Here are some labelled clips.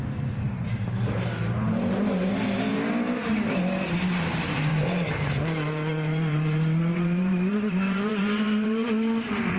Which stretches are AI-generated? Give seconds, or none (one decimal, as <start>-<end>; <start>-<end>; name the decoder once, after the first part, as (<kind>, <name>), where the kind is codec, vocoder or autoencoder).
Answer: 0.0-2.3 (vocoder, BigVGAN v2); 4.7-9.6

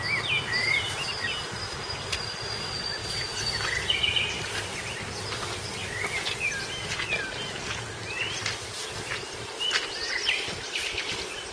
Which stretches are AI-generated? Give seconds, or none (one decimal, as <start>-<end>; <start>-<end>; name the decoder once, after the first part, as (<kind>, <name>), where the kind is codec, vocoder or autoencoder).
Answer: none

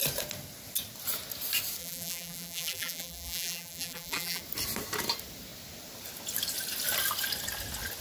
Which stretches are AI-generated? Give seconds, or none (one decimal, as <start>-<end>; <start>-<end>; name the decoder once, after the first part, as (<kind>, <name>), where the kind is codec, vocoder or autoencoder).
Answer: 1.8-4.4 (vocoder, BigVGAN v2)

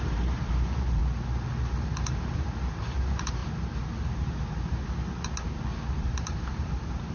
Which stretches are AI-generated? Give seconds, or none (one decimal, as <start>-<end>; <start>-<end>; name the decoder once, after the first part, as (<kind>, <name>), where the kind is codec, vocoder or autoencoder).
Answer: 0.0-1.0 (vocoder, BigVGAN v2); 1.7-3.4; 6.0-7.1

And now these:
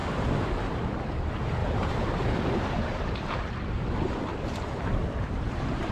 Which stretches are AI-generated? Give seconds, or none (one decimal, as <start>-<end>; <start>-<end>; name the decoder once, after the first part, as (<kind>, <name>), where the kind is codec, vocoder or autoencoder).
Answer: 0.0-0.8 (vocoder, BigVGAN v2); 1.6-3.5; 4.3-5.9

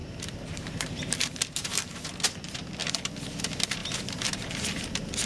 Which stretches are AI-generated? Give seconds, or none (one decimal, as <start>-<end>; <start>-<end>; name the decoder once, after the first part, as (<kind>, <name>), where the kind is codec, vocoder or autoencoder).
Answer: 0.0-2.2 (vocoder, BigVGAN v2); 3.8-4.5

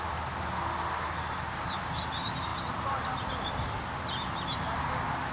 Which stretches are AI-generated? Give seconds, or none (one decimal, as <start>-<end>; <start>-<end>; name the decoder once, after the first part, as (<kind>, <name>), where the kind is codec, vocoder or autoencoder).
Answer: none